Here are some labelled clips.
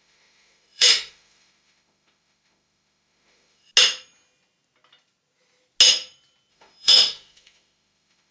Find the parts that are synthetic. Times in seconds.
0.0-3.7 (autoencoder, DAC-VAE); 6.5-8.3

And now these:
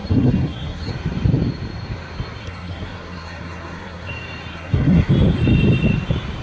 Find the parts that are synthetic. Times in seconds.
0.0-0.9 (codec, SNAC); 2.4-4.1; 4.5-5.1

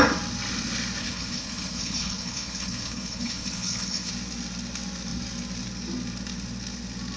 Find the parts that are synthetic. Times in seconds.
1.0-4.1 (codec, HILCodec)

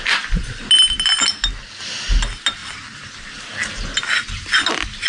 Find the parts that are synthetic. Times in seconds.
2.6-3.7 (vocoder, BigVGAN v2)

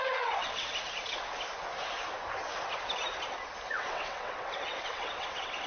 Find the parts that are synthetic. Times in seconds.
0.0-0.7 (vocoder, WaveNeXt); 3.7-5.7

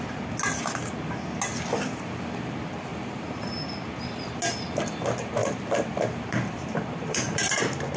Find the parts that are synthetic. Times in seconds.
2.9-4.3 (vocoder, BigVGAN v2); 5.4-7.6

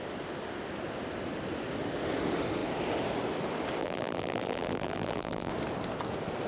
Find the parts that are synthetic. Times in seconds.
3.8-5.5 (vocoder, BigVGAN v2)

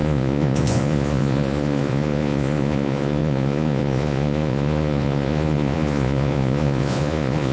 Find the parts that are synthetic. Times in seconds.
0.0-7.5 (vocoder, Vocos)